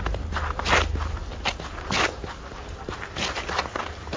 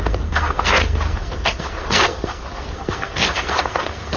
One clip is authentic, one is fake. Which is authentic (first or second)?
first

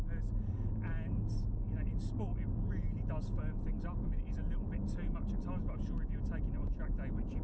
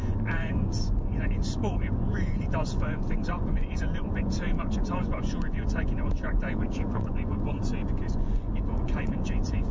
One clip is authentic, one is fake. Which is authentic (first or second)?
first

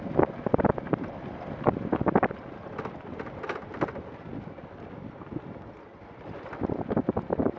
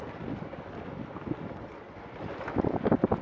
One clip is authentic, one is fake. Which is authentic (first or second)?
first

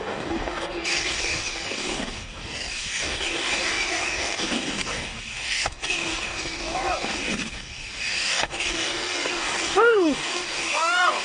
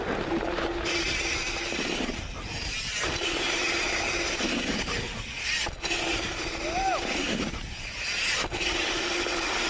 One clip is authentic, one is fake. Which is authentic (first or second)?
second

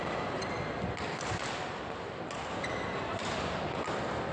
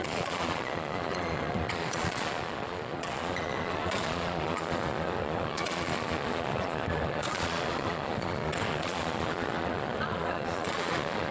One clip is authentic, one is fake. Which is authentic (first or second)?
first